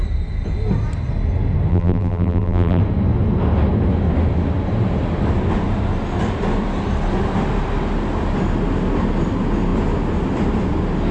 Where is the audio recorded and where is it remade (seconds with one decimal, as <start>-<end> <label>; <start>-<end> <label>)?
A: 0.0-1.7 recorded; 1.7-2.8 remade; 2.8-11.1 recorded